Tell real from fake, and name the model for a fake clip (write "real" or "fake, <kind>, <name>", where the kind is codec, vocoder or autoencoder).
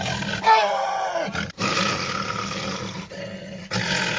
real